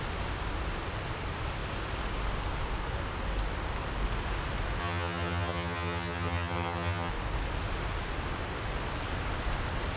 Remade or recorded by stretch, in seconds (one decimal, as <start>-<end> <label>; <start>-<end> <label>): 0.0-4.8 recorded; 4.8-7.1 remade; 7.1-10.0 recorded